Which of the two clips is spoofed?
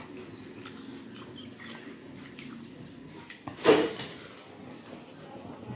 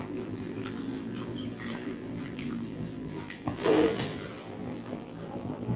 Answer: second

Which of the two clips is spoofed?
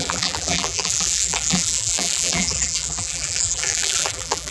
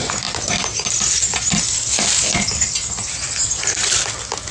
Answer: first